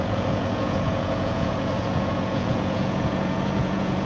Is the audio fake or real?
fake